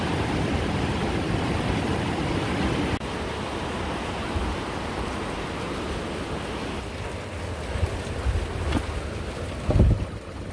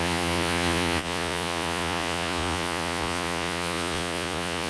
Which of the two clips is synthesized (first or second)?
second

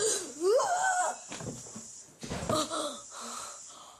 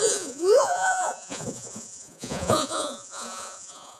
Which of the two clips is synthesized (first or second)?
second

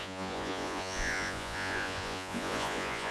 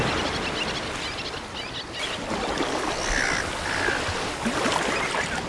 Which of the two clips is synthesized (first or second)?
first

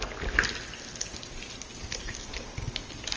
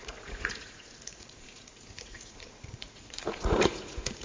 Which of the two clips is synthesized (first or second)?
second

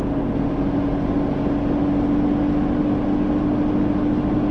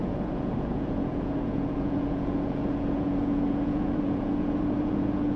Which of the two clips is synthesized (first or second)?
second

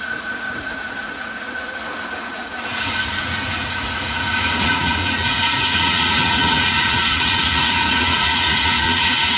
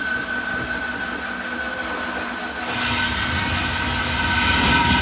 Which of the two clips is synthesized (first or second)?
first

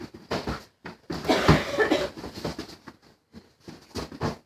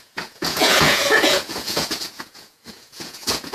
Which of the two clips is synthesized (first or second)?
second